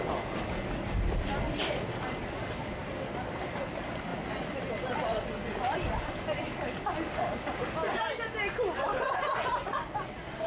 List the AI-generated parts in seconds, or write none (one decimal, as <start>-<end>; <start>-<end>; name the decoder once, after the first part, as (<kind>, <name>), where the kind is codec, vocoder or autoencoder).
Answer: none